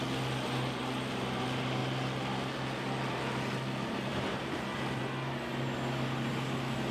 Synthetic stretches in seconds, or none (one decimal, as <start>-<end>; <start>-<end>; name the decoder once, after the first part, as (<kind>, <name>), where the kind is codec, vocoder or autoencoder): none